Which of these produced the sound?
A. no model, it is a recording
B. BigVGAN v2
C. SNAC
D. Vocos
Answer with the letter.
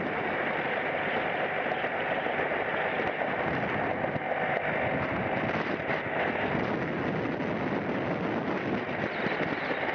A